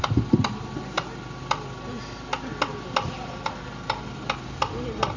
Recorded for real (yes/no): yes